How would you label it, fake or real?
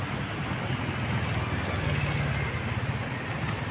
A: real